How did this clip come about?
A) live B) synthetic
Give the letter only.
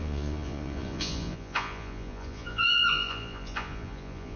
B